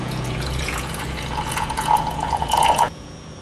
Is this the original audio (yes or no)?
no